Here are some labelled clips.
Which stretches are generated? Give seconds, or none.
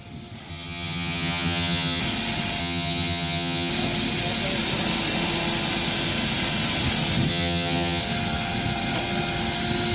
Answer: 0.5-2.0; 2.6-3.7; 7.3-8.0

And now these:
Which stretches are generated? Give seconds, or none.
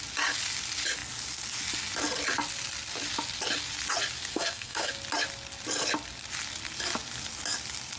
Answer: 4.3-4.9